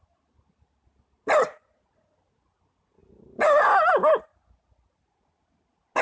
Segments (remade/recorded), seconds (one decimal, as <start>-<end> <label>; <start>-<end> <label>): 0.0-6.0 recorded